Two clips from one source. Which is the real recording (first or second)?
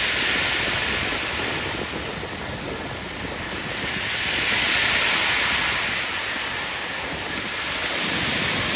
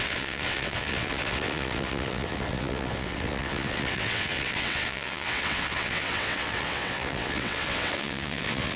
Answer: first